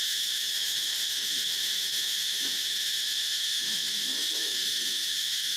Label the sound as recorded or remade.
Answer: remade